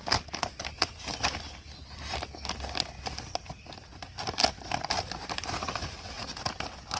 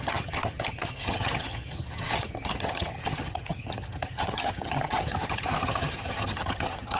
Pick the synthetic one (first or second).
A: second